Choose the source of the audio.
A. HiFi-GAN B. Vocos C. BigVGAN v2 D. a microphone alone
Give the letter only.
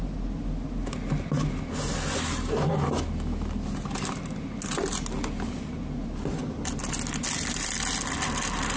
D